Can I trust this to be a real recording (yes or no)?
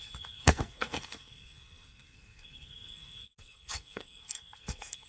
no